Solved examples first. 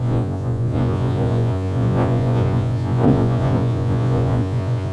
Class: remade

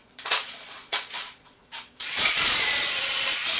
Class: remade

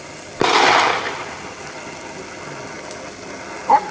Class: recorded